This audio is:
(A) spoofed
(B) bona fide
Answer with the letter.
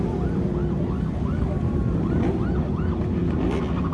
B